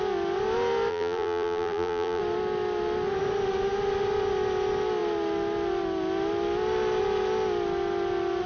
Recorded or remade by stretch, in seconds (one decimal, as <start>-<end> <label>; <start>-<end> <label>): 0.0-0.9 recorded; 0.9-2.2 remade; 2.2-8.5 recorded